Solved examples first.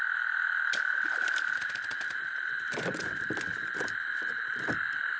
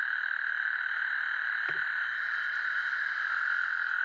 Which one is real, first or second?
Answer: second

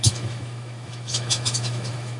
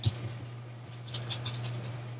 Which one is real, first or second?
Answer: second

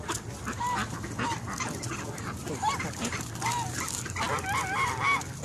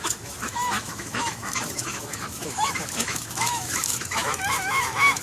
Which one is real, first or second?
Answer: first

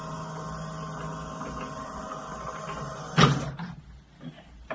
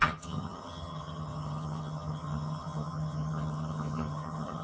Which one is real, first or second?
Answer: first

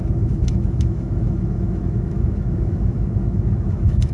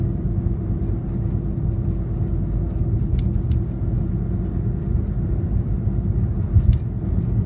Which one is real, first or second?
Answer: second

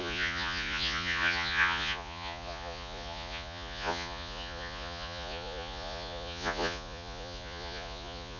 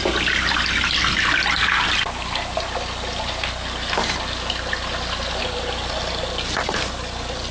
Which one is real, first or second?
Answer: second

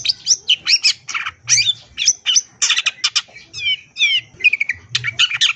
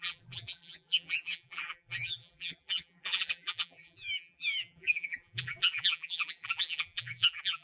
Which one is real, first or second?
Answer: first